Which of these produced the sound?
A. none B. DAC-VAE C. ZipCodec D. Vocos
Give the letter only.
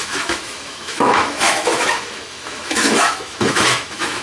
B